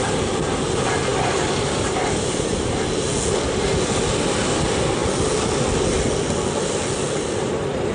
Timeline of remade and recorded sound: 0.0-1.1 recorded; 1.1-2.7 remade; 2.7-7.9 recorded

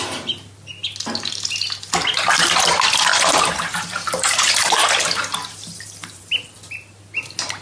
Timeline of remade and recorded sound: 0.0-3.1 recorded; 3.1-6.3 remade; 6.3-7.6 recorded

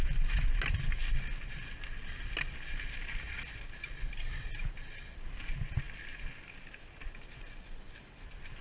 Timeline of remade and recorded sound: 0.0-8.6 recorded